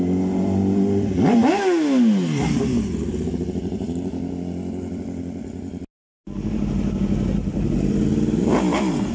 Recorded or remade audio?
recorded